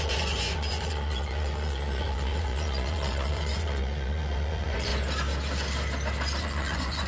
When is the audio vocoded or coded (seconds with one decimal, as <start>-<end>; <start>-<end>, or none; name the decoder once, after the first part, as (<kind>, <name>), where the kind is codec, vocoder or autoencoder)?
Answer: 0.0-4.9 (vocoder, Vocos); 6.4-7.1